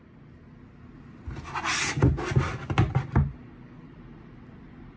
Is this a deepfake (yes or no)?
no